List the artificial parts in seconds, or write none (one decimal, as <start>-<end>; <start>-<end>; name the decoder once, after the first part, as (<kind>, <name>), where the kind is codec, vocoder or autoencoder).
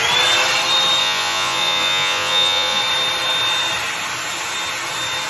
1.0-2.8 (vocoder, Vocos)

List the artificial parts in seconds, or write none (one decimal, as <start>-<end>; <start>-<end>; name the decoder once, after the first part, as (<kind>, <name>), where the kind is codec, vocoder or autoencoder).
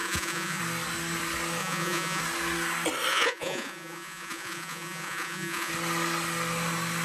0.0-0.6 (vocoder, Vocos); 1.6-2.2; 3.1-5.7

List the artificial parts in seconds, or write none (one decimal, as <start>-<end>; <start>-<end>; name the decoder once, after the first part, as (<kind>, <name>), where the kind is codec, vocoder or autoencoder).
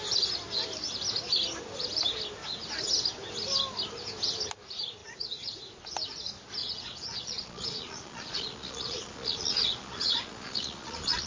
5.0-5.8 (vocoder, Vocos); 6.6-11.3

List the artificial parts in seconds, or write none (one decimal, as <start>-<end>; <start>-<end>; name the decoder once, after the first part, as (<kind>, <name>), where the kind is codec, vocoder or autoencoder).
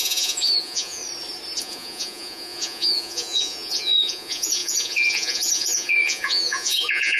0.0-1.0 (vocoder, Vocos); 1.6-7.2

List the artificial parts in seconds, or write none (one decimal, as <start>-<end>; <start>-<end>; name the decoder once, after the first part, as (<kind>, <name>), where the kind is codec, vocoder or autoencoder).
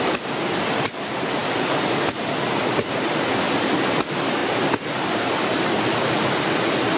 none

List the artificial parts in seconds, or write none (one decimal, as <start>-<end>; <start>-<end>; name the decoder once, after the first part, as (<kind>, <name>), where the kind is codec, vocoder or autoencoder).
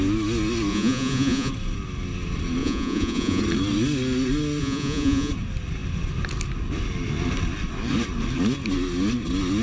0.7-1.5 (vocoder, Vocos); 2.6-3.4; 4.6-5.3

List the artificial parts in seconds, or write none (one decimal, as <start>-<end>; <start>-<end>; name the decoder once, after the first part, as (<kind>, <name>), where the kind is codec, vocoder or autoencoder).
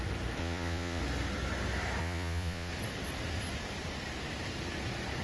0.4-1.0 (vocoder, Vocos); 2.0-2.7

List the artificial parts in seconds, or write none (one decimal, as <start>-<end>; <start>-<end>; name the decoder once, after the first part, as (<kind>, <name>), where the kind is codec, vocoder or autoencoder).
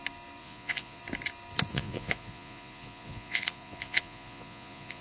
0.4-1.0 (vocoder, Vocos); 1.7-5.0